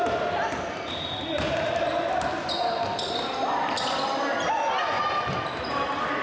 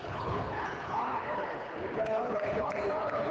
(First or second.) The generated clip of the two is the second